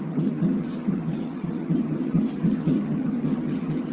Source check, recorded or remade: remade